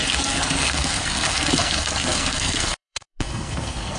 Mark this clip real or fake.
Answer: fake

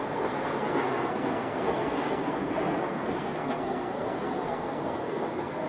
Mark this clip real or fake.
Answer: fake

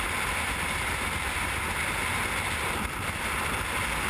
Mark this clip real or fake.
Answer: real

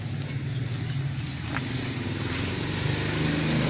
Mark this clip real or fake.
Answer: real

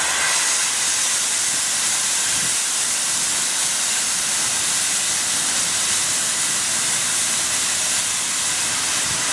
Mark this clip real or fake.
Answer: real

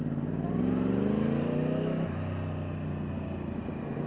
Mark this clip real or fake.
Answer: real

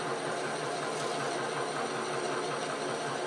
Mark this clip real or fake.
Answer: real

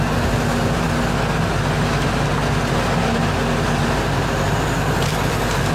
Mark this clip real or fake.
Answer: real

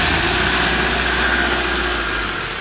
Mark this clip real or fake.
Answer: real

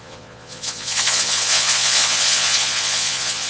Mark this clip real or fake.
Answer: fake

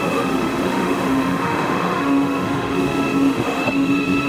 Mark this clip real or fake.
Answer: fake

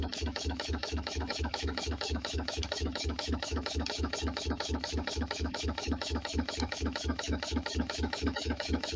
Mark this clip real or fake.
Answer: fake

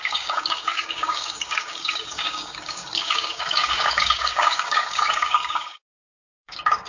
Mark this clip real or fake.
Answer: fake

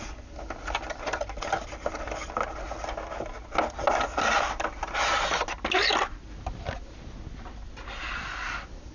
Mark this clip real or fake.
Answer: real